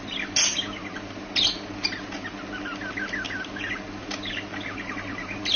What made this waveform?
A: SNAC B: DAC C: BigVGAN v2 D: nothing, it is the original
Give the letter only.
D